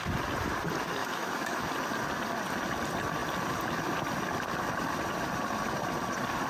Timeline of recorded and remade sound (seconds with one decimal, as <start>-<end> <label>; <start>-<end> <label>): 0.0-1.0 recorded; 1.0-1.7 remade; 1.7-6.5 recorded